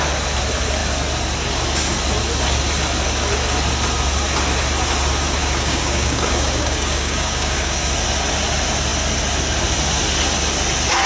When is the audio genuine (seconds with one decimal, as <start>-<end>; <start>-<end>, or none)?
0.0-5.4; 7.9-11.1